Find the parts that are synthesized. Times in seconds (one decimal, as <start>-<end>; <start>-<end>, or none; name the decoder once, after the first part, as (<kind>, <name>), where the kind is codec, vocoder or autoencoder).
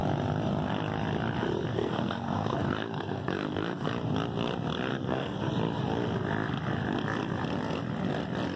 1.7-3.9 (codec, SNAC); 4.9-5.5